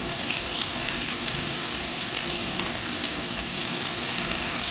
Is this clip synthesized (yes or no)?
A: yes